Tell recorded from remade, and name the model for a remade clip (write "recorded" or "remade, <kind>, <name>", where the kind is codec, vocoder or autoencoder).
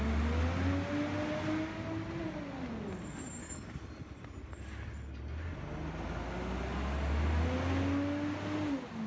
recorded